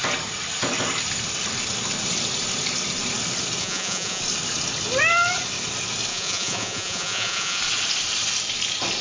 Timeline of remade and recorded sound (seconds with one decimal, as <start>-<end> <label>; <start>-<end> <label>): 0.0-3.6 recorded; 3.6-4.2 remade; 4.2-6.1 recorded; 6.1-7.6 remade; 7.6-9.0 recorded